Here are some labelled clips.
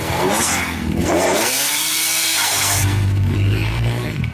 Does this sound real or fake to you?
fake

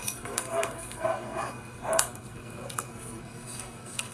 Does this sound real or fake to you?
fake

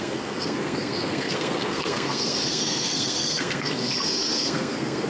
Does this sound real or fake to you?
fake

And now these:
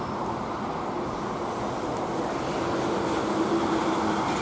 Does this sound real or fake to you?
real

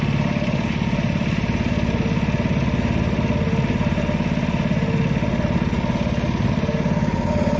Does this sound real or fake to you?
real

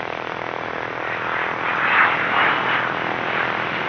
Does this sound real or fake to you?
real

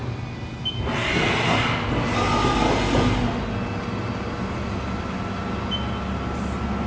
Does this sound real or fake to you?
real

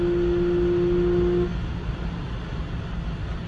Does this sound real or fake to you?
real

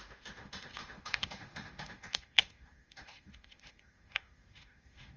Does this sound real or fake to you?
fake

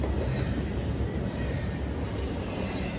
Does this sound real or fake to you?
real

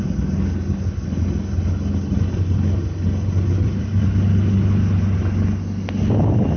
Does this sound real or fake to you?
real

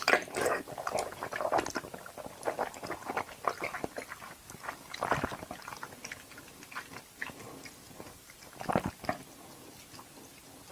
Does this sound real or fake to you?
real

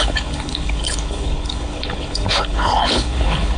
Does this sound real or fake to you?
fake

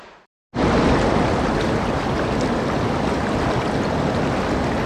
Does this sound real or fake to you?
real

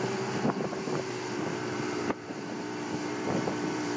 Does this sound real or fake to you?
fake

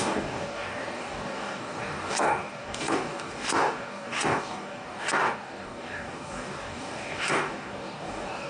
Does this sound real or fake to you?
fake